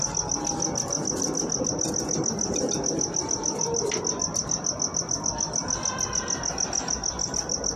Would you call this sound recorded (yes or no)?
yes